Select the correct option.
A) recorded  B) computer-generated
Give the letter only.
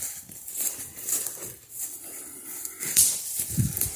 B